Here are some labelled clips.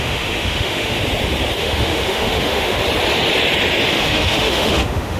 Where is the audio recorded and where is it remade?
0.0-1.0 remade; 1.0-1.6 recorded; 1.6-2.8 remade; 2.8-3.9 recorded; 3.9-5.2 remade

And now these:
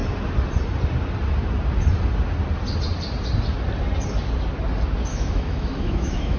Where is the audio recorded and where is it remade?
0.0-5.1 recorded; 5.1-6.4 remade

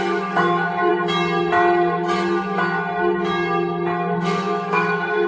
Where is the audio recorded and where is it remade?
0.0-0.9 remade; 0.9-4.1 recorded; 4.1-5.3 remade

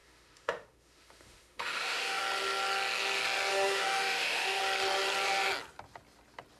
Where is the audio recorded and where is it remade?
0.0-2.2 remade; 2.2-3.5 recorded; 3.5-4.6 remade; 4.6-6.6 recorded

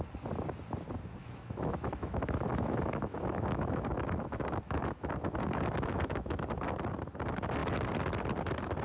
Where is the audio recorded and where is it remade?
0.0-1.2 recorded; 1.2-6.4 remade; 6.4-8.8 recorded

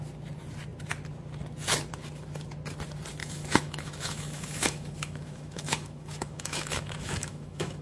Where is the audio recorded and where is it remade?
0.0-3.2 recorded; 3.2-7.8 remade

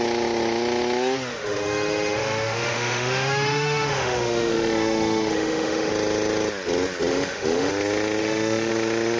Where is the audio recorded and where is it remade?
0.0-1.3 recorded; 1.3-5.9 remade; 5.9-7.1 recorded; 7.1-7.7 remade; 7.7-8.2 recorded; 8.2-8.7 remade; 8.7-9.2 recorded